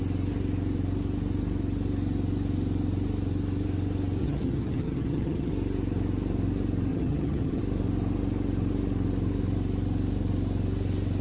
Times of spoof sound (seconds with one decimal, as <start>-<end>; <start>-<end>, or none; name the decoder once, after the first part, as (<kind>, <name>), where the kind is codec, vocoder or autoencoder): 4.2-5.5 (vocoder, HiFi-GAN); 6.9-7.6

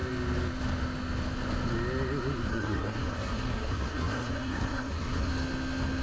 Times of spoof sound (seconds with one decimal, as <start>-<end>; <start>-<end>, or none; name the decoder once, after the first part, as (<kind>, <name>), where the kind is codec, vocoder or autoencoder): 2.5-5.3 (codec, SNAC)

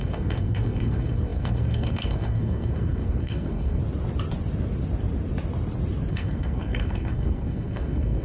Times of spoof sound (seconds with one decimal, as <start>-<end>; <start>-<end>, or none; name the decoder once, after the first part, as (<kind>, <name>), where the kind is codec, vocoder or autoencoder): 0.0-3.8 (codec, SNAC); 6.1-8.2

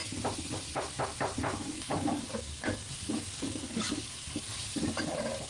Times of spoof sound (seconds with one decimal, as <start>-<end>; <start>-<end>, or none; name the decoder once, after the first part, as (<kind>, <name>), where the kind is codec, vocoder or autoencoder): 1.6-4.5 (codec, DAC)

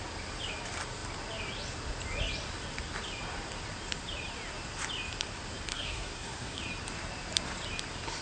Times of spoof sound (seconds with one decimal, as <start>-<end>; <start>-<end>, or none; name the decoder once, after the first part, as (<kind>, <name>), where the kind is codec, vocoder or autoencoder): 5.7-6.6 (codec, SNAC)

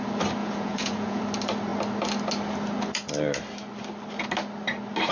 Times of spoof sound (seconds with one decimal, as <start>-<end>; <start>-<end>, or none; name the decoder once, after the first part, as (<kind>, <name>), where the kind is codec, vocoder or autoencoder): 0.4-1.2 (vocoder, Vocos)

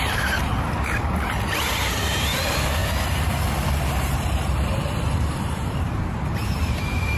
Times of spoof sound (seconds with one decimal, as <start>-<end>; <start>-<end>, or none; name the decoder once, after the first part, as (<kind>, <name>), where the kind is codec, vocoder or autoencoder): 0.0-0.5 (vocoder, BigVGAN v2); 1.6-2.8; 3.8-7.2

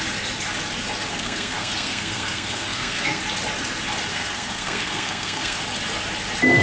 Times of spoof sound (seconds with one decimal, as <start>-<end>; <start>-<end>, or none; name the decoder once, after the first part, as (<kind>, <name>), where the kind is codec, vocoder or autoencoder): 1.1-3.2 (codec, SNAC); 4.1-5.6